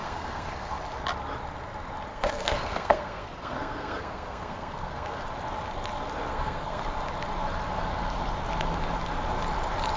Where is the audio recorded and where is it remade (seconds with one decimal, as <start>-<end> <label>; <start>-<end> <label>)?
0.0-0.8 remade; 0.8-2.1 recorded; 2.1-5.2 remade; 5.2-6.3 recorded; 6.3-6.8 remade; 6.8-10.0 recorded